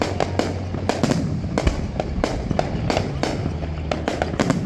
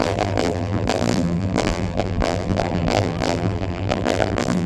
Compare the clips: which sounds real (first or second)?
first